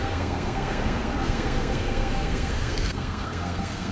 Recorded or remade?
remade